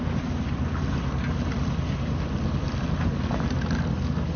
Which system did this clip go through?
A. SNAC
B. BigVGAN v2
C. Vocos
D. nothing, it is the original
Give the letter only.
D